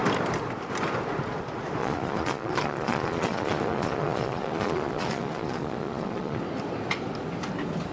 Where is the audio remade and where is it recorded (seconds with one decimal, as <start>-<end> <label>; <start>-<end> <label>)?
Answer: 0.0-1.8 recorded; 1.8-6.4 remade; 6.4-7.9 recorded